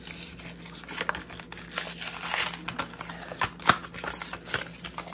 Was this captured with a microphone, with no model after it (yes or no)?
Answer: yes